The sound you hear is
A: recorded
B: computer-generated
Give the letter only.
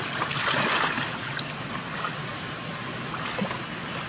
A